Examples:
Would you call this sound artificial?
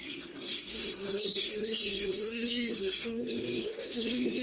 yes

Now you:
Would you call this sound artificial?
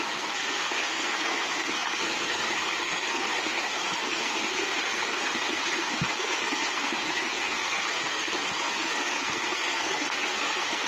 yes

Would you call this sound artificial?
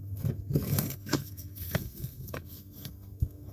yes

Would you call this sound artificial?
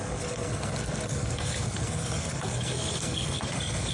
yes